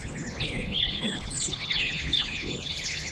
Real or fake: fake